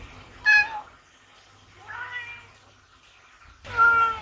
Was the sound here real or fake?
real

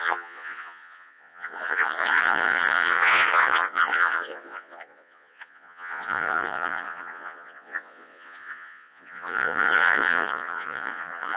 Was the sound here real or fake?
fake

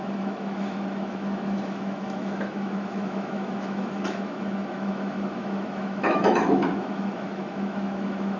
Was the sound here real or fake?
fake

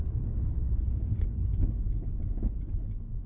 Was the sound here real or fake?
fake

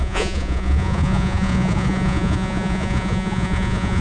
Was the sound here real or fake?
fake